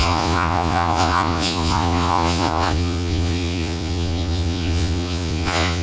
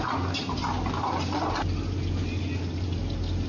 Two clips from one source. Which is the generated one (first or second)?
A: first